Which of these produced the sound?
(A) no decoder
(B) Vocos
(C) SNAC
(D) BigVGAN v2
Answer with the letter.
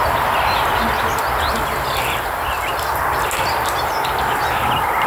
A